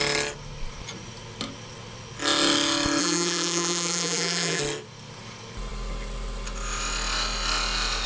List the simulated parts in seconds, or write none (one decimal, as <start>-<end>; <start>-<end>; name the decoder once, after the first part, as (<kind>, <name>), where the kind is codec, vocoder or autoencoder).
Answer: 3.0-4.6 (vocoder, BigVGAN v2)